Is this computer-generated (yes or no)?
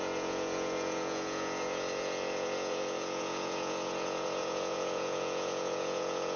yes